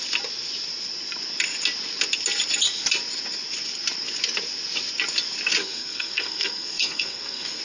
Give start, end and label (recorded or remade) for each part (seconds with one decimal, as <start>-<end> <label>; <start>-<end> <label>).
0.0-5.6 recorded; 5.6-7.6 remade